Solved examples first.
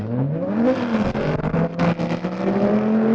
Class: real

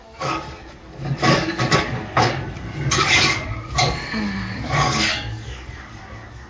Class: fake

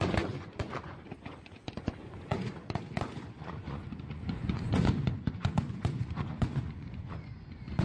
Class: fake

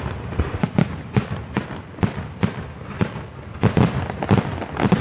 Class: real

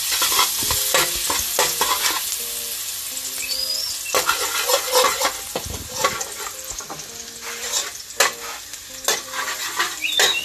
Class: real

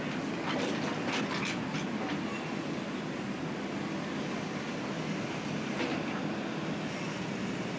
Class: real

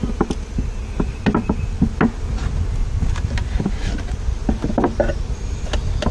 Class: real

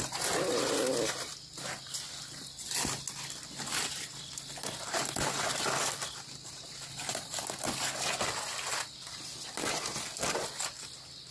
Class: real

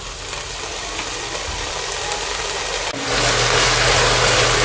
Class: real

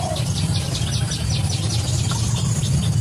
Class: real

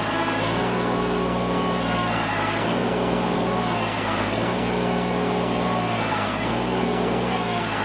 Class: fake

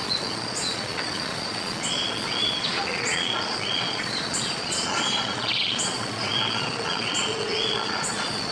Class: fake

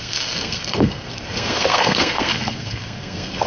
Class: fake